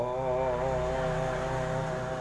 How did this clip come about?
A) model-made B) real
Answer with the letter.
B